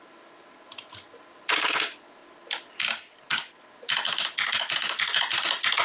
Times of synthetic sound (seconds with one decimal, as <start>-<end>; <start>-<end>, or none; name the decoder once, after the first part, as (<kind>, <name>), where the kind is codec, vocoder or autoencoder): none